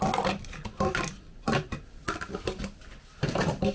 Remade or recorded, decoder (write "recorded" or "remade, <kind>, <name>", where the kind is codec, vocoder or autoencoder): recorded